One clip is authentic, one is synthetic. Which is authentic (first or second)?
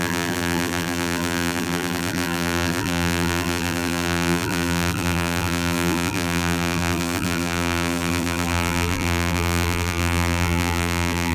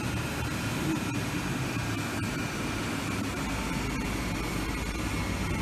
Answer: second